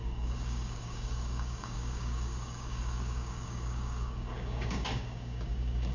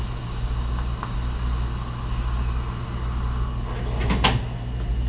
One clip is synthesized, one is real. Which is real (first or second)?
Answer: second